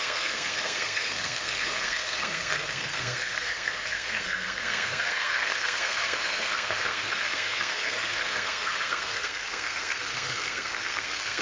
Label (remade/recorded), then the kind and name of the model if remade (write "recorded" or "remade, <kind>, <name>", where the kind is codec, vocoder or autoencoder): remade, codec, SNAC